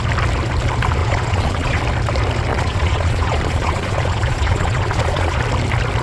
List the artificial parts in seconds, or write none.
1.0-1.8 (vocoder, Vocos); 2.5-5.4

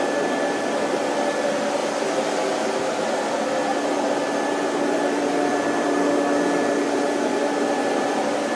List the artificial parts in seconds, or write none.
none

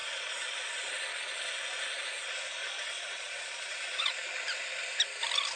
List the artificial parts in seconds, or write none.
0.0-0.9 (vocoder, Vocos); 2.6-4.1

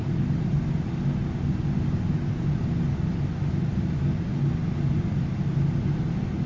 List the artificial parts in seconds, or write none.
none